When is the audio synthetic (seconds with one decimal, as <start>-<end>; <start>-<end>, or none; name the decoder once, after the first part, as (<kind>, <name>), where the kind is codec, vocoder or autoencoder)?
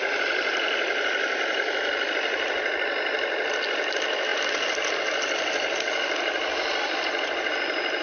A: none